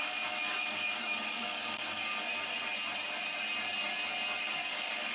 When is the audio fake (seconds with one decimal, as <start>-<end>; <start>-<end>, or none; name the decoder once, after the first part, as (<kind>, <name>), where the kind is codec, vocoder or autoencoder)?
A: 0.0-2.1 (codec, DAC); 4.4-5.1